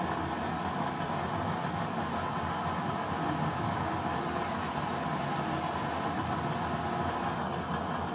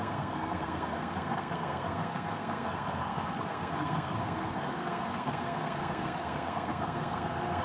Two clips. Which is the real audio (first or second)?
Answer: first